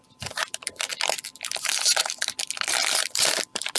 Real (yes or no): no